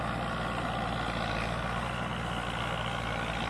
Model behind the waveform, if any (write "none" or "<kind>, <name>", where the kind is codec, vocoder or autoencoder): none